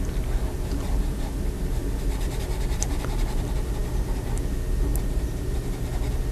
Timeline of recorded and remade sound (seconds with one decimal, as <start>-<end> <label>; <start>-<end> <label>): 0.0-4.9 recorded; 4.9-5.5 remade; 5.5-6.3 recorded